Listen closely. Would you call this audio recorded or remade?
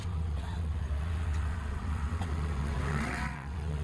remade